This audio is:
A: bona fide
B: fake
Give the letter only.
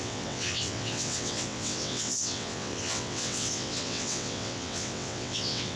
B